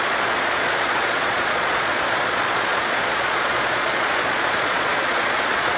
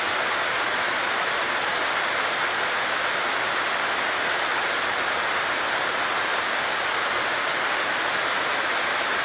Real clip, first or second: second